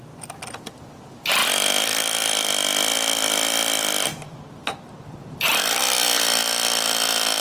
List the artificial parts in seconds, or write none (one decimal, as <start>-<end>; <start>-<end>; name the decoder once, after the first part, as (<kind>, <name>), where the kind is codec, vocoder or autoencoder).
1.4-5.8 (vocoder, BigVGAN v2); 6.4-7.4

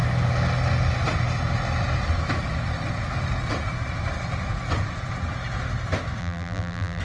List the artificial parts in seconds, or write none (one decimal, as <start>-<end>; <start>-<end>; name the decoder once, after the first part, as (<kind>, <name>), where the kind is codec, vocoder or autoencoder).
6.2-7.0 (vocoder, BigVGAN v2)

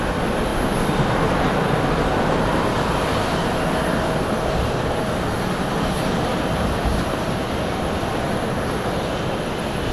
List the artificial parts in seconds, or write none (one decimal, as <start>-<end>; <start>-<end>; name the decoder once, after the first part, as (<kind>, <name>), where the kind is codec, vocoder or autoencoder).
0.5-4.4 (vocoder, BigVGAN v2); 6.3-7.4

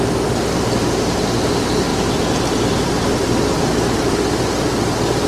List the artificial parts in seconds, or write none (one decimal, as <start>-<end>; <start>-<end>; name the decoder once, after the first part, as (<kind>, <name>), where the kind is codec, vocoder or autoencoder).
none

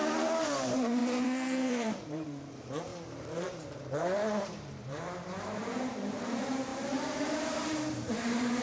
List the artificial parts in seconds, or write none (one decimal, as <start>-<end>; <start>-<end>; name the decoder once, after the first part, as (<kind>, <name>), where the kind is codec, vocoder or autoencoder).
0.0-8.6 (vocoder, BigVGAN v2)

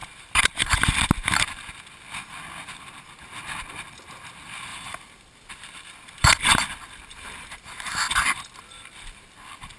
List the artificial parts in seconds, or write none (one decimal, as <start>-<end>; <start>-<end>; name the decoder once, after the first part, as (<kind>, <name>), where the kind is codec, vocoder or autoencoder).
0.0-1.4 (vocoder, BigVGAN v2); 4.7-9.4

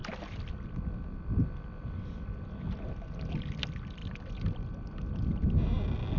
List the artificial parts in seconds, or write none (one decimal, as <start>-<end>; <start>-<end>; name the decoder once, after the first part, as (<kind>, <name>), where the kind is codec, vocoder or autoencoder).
0.0-2.9 (vocoder, BigVGAN v2); 4.0-4.7

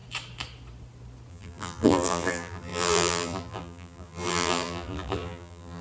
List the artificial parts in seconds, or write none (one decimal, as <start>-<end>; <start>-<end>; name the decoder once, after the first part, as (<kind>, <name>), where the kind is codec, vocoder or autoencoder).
1.3-5.8 (vocoder, BigVGAN v2)